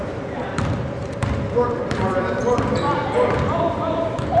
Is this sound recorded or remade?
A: remade